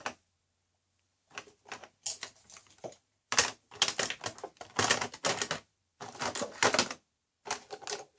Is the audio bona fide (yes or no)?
yes